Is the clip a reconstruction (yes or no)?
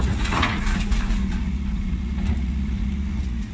yes